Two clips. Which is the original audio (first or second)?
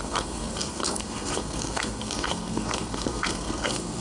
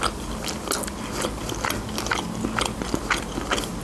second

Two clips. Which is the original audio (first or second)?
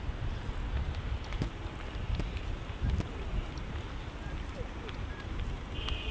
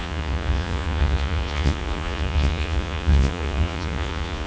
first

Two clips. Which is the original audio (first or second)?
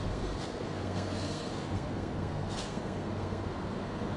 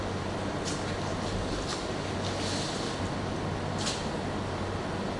second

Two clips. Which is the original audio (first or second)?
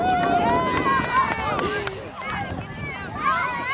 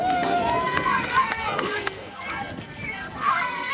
first